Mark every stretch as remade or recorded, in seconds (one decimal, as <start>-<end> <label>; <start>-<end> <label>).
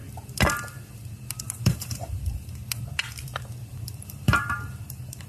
0.0-1.6 recorded; 1.6-2.6 remade; 2.6-3.7 recorded; 3.7-5.3 remade